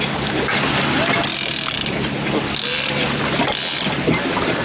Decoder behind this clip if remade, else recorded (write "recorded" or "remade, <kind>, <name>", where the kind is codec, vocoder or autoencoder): recorded